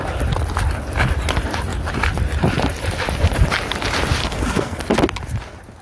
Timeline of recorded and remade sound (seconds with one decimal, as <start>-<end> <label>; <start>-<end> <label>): 0.0-4.2 recorded; 4.2-4.8 remade; 4.8-5.8 recorded